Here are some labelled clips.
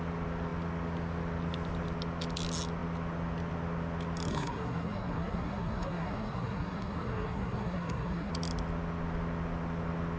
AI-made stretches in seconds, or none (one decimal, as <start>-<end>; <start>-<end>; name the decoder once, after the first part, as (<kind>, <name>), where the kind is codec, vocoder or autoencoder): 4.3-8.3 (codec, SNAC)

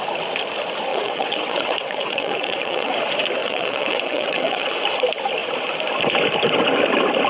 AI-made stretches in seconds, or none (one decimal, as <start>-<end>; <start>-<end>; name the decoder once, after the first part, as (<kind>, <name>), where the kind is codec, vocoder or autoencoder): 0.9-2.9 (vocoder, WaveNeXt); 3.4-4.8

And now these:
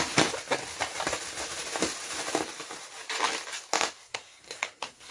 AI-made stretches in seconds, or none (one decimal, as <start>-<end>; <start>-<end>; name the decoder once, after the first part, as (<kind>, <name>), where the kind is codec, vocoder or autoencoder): 4.0-5.1 (codec, SNAC)

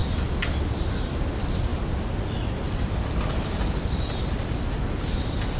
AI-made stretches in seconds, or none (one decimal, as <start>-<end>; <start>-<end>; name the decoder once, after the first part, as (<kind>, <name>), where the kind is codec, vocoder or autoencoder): none

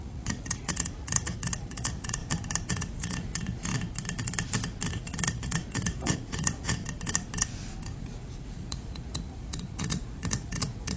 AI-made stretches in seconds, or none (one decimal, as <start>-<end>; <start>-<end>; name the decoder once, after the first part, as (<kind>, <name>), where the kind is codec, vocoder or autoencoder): 0.0-2.2 (vocoder, Vocos); 2.7-3.7; 4.9-6.8; 8.0-11.0

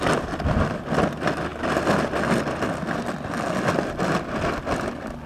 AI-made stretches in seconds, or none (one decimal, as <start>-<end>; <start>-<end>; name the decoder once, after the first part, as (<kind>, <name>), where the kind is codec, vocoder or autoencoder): none

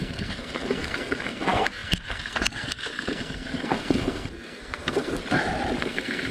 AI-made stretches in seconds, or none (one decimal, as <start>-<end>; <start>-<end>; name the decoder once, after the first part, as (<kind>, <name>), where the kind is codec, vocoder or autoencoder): 0.0-5.2 (codec, SNAC); 5.8-6.3

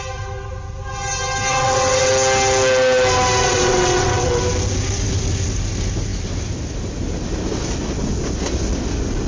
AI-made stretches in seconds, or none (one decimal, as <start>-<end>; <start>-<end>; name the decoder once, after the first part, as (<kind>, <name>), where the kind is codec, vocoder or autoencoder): 1.5-2.1 (vocoder, WaveNeXt); 3.4-4.4